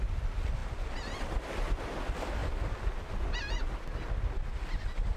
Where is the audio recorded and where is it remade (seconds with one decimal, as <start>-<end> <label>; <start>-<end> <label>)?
0.0-5.2 recorded